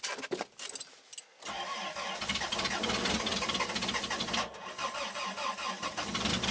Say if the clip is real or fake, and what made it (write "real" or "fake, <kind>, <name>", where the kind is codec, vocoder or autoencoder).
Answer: real